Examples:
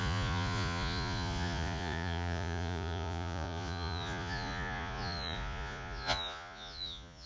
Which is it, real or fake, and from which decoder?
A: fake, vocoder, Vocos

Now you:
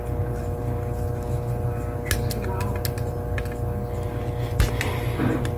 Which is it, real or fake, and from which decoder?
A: real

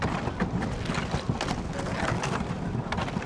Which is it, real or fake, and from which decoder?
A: real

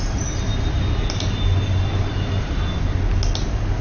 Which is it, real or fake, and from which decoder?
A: real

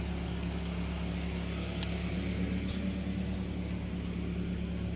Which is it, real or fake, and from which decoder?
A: real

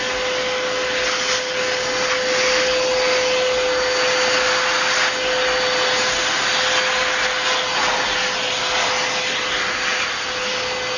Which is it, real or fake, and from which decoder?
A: real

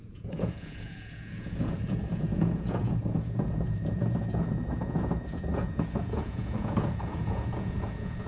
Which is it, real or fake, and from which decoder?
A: fake, vocoder, Vocos